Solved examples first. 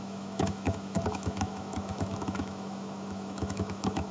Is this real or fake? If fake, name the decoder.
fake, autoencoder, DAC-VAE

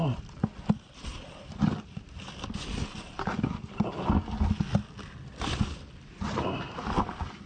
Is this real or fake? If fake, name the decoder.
real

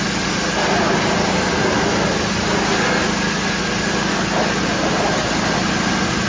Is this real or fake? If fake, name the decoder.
real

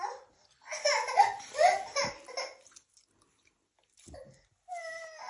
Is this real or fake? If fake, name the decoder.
real